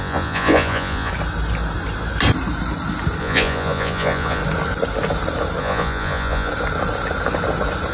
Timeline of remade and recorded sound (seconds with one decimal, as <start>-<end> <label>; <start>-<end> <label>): 0.0-1.1 remade; 1.1-3.2 recorded; 3.2-4.4 remade; 4.4-5.6 recorded; 5.6-6.5 remade; 6.5-7.9 recorded